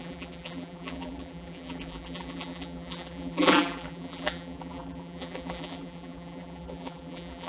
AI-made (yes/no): yes